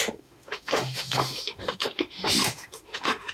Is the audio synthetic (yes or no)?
yes